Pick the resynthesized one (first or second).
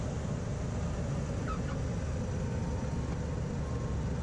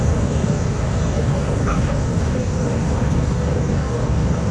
second